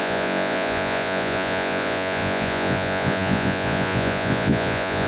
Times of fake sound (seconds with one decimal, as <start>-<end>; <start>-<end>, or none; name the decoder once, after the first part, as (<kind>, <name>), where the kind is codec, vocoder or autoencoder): 0.0-5.1 (vocoder, Vocos)